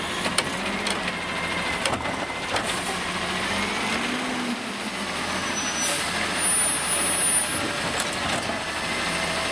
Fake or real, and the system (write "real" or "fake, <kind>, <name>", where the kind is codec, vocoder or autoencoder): real